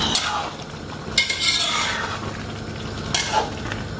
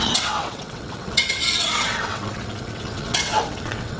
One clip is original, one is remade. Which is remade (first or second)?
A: second